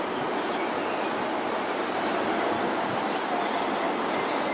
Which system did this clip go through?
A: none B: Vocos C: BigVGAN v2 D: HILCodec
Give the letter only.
A